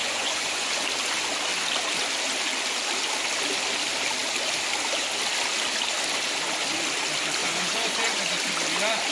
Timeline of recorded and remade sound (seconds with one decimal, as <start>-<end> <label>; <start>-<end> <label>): 0.0-0.8 remade; 0.8-7.4 recorded; 7.4-8.2 remade; 8.2-9.1 recorded